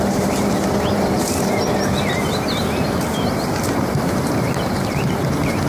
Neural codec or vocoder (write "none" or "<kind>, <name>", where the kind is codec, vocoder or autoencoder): vocoder, BigVGAN v2